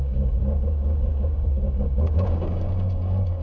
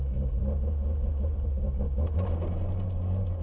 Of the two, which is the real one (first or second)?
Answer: second